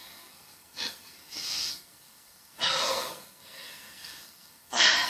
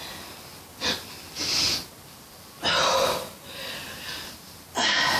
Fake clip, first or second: first